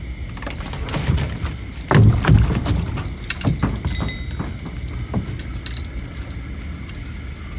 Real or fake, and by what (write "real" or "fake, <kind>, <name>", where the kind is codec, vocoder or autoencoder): real